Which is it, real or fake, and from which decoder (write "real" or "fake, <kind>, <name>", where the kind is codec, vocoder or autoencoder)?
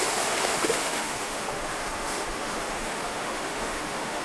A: fake, autoencoder, DAC-VAE